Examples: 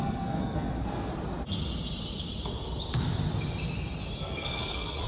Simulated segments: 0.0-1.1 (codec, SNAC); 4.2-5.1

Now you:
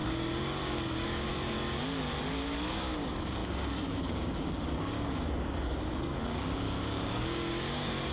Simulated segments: 0.0-1.3 (codec, DAC); 2.7-8.1

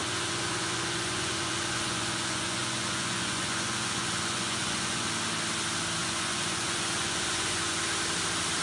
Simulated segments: 0.0-5.1 (vocoder, Vocos); 6.0-7.8

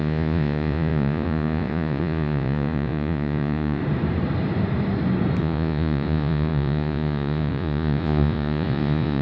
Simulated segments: 0.0-3.8 (vocoder, Vocos); 5.4-9.2

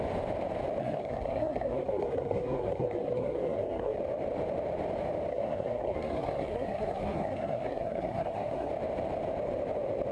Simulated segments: 0.8-4.0 (codec, SNAC); 5.3-8.7